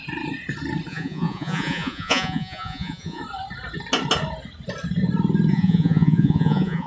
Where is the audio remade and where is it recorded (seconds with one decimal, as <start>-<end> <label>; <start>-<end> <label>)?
0.0-0.9 recorded; 0.9-3.2 remade; 3.2-5.5 recorded; 5.5-6.9 remade